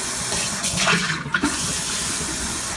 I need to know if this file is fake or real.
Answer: fake